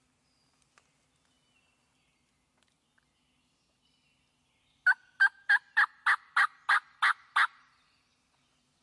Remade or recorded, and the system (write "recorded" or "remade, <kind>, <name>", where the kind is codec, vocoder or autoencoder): recorded